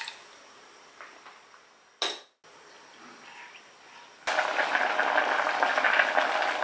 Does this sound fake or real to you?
real